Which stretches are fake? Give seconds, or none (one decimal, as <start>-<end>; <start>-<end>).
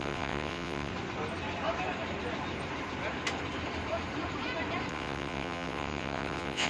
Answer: 0.0-0.9; 4.9-6.7